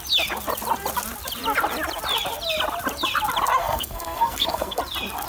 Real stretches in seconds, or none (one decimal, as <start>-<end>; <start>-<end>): 0.0-3.6; 4.8-5.3